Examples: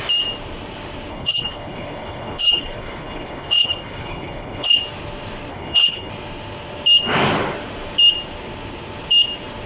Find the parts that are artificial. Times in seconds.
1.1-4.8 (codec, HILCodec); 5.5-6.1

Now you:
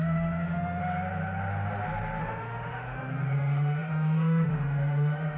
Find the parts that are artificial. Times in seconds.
0.0-0.8 (autoencoder, DAC-VAE); 2.2-5.4